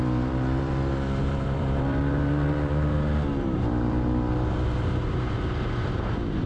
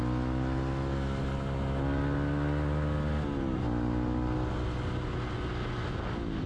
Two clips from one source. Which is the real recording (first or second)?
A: second